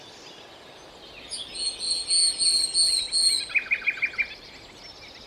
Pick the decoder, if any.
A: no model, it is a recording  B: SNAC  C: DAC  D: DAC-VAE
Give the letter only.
A